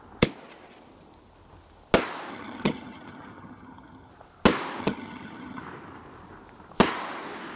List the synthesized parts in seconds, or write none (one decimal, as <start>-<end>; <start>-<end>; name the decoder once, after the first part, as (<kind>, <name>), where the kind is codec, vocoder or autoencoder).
2.3-4.1 (vocoder, HiFi-GAN); 4.8-5.6

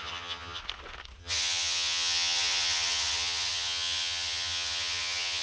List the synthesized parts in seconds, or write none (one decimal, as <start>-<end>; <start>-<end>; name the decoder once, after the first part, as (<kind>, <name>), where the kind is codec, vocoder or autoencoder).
0.0-0.6 (vocoder, HiFi-GAN); 1.2-5.4

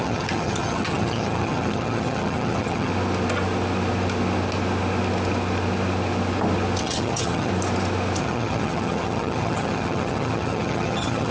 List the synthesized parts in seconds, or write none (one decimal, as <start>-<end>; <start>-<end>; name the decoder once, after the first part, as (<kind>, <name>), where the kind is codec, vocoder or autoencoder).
0.0-2.9 (vocoder, HiFi-GAN); 6.8-7.5; 8.2-11.3

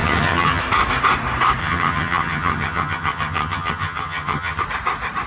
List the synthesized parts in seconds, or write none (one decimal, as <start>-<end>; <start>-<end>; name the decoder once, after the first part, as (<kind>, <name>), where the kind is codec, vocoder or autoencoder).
0.0-0.6 (vocoder, HiFi-GAN); 1.6-4.6

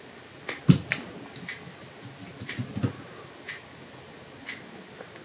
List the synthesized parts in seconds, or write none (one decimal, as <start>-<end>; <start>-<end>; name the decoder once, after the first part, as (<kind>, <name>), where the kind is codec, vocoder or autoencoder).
none